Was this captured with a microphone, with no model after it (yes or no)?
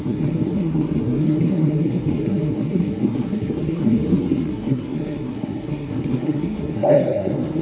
no